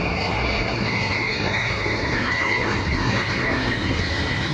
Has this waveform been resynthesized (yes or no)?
yes